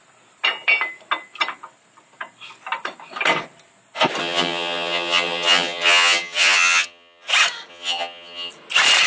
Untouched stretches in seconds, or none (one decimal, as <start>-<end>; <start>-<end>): 0.0-4.2; 7.3-7.7; 8.5-9.1